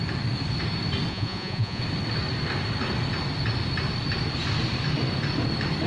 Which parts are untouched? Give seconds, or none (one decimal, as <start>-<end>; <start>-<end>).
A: 0.0-1.1; 1.8-5.9